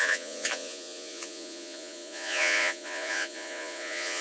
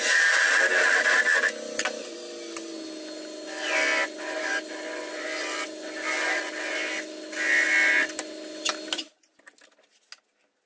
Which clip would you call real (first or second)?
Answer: second